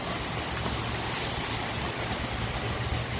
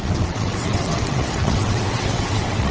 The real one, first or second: first